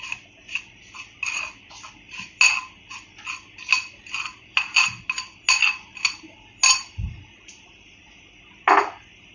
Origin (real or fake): real